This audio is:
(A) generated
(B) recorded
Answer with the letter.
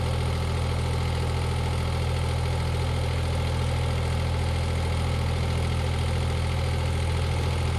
B